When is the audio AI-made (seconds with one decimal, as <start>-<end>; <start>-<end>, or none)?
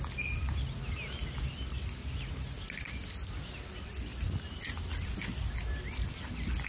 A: none